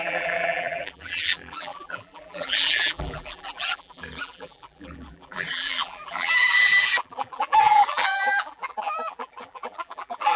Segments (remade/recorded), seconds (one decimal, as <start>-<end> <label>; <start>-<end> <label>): 0.0-10.4 remade